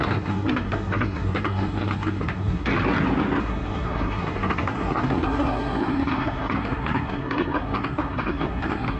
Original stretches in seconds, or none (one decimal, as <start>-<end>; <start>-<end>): 2.7-3.4